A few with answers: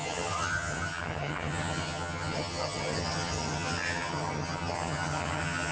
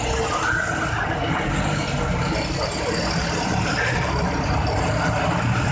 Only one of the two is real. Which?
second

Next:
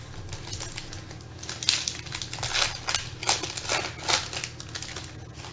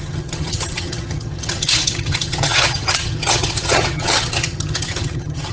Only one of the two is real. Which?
first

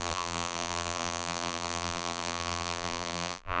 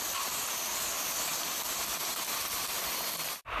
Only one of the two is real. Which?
second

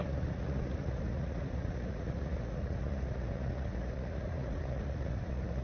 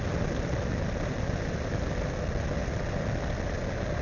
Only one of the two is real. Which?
second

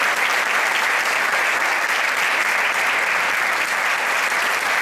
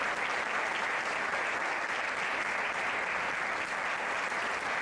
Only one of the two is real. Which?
second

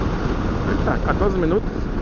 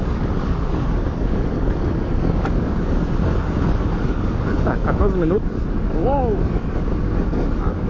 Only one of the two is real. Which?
first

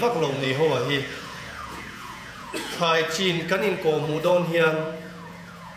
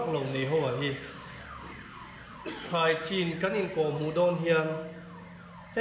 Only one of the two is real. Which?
second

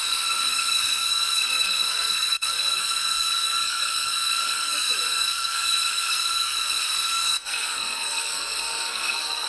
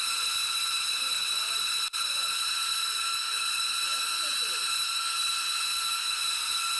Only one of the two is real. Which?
second